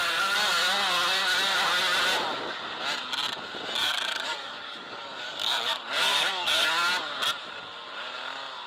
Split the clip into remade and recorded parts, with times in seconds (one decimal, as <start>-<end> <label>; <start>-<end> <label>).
0.0-3.8 recorded; 3.8-6.7 remade; 6.7-8.7 recorded